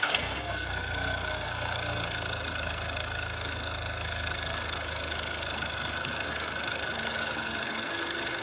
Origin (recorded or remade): remade